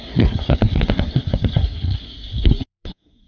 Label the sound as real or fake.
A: fake